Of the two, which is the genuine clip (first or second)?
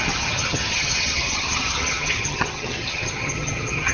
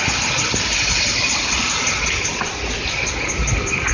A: second